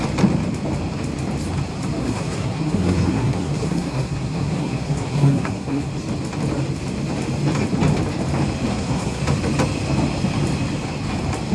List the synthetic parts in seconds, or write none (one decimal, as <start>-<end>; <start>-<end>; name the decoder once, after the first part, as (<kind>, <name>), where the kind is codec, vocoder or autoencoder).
2.0-5.9 (codec, SNAC); 8.7-9.2